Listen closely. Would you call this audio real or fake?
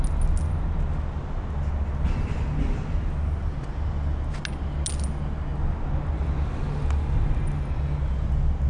real